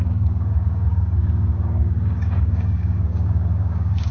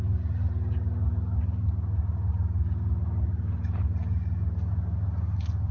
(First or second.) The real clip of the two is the second